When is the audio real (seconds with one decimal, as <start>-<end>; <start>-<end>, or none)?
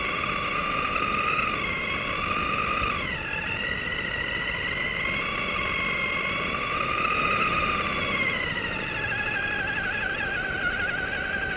0.0-3.1; 3.7-11.6